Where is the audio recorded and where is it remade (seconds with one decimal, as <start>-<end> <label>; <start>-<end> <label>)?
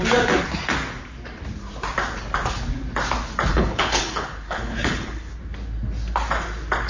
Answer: 0.0-3.5 recorded; 3.5-5.3 remade; 5.3-6.9 recorded